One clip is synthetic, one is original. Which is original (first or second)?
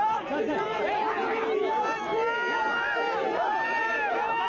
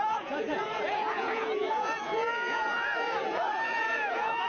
first